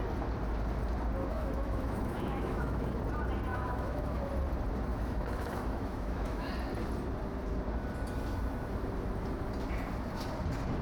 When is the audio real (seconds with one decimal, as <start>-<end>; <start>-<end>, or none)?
0.0-1.2; 3.0-3.5; 4.3-4.9; 6.5-10.8